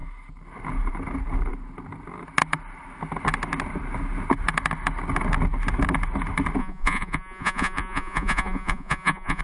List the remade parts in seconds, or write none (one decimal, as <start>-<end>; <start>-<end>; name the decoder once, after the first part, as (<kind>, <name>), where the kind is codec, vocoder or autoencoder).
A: 6.6-9.4 (vocoder, Vocos)